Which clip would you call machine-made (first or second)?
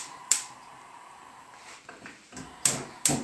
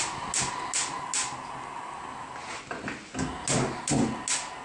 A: first